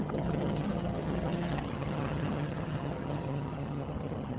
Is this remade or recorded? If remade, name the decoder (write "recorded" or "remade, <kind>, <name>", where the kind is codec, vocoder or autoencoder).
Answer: remade, vocoder, HiFi-GAN